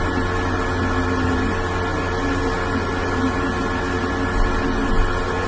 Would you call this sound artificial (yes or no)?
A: no